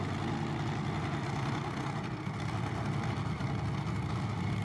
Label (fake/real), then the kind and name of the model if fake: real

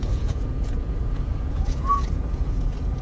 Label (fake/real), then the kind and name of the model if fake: fake, vocoder, Vocos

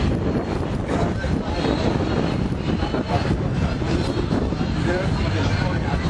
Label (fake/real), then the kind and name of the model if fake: fake, vocoder, BigVGAN v2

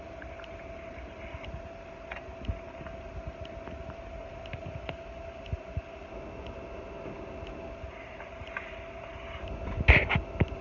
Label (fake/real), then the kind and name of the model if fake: real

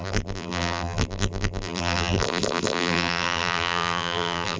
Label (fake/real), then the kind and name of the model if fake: fake, vocoder, BigVGAN v2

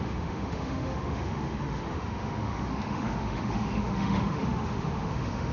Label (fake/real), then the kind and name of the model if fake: fake, autoencoder, DAC-VAE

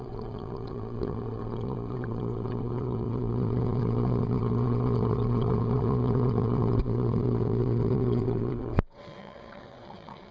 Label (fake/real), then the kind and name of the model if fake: fake, vocoder, WaveNeXt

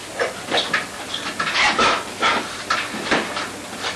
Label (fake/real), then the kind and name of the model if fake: real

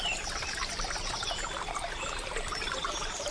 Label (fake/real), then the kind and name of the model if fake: real